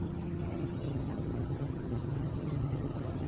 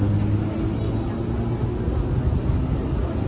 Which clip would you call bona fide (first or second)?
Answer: second